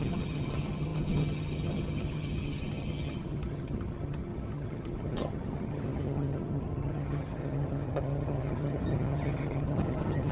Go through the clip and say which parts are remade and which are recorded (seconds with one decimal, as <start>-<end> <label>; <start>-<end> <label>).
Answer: 0.0-10.3 remade